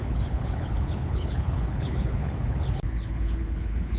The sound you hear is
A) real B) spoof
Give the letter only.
B